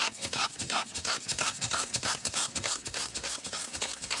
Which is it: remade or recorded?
remade